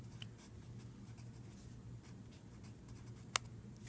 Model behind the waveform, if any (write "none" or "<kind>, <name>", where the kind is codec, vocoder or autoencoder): none